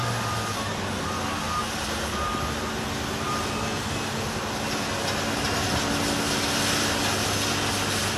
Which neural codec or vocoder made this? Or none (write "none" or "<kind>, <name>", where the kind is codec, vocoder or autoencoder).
none